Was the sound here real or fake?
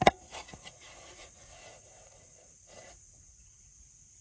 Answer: fake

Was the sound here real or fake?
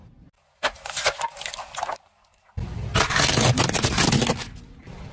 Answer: real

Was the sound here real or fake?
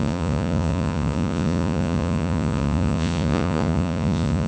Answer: fake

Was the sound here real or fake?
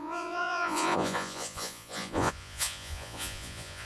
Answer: fake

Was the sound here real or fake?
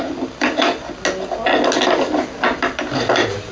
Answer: real